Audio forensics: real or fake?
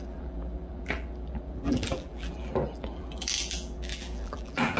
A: fake